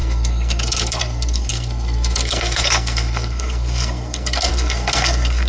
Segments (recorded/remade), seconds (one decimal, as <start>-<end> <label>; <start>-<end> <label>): 0.0-5.5 remade